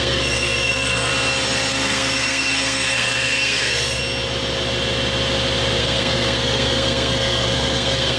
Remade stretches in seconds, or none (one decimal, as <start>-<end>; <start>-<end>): 0.0-1.1; 1.7-4.0; 5.8-8.2